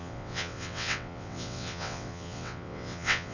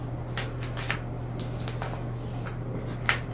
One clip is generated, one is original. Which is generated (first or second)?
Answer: first